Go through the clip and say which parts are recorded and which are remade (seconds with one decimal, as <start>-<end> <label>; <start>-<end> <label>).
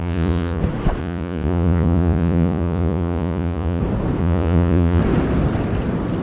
0.0-0.6 remade; 0.6-1.0 recorded; 1.0-3.8 remade; 3.8-4.2 recorded; 4.2-5.0 remade; 5.0-6.2 recorded